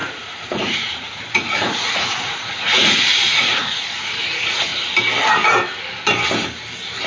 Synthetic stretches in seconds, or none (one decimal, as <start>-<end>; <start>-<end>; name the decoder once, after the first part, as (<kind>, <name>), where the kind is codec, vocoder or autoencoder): 0.0-4.7 (vocoder, Vocos)